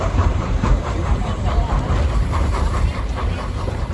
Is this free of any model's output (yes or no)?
no